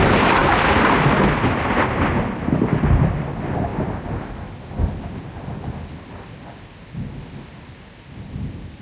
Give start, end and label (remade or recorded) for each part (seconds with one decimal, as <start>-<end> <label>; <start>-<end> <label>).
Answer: 0.0-8.8 recorded